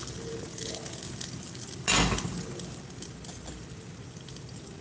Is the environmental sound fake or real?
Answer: real